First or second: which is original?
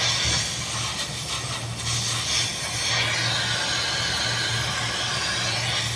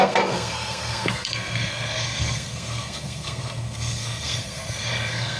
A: first